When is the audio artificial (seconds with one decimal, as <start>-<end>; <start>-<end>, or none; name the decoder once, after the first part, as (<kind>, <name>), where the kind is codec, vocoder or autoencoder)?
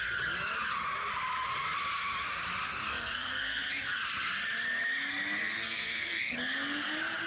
2.8-3.6 (codec, SNAC); 5.4-6.3